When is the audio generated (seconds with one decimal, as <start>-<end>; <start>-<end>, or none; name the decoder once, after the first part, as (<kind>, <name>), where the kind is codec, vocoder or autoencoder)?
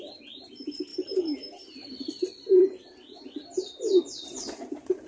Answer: 0.9-4.0 (vocoder, BigVGAN v2)